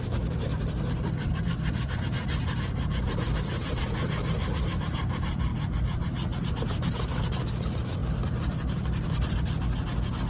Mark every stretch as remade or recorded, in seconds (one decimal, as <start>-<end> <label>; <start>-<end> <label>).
0.0-8.0 remade; 8.0-10.3 recorded

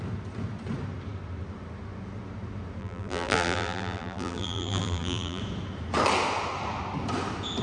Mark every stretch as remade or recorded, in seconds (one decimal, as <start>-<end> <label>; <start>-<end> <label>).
0.0-2.8 recorded; 2.8-5.4 remade; 5.4-7.6 recorded